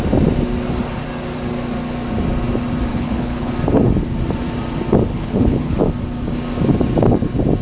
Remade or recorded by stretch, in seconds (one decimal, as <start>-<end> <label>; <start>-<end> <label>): 0.0-2.9 recorded; 2.9-3.5 remade; 3.5-5.1 recorded; 5.1-5.8 remade; 5.8-7.6 recorded